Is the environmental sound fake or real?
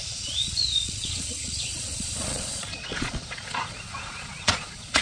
fake